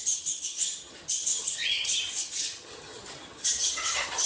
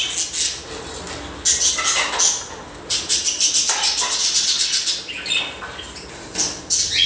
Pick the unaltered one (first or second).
second